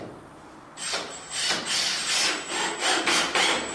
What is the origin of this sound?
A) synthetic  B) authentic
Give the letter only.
B